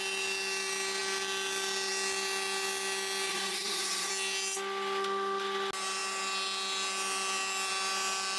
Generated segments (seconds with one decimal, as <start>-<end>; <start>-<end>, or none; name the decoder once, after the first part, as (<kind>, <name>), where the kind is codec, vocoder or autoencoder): 3.3-4.1 (codec, SNAC)